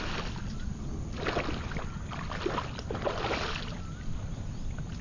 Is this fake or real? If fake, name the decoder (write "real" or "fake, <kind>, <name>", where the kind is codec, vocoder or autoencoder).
real